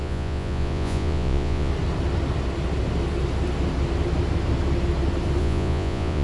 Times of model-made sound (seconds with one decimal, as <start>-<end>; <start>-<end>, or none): 0.0-1.7; 5.4-6.2